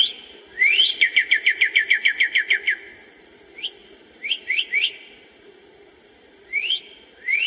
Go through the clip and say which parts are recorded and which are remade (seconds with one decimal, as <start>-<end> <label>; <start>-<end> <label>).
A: 0.0-3.8 recorded; 3.8-4.6 remade; 4.6-7.5 recorded